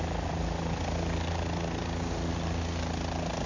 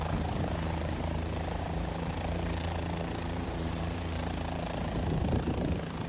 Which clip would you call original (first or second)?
first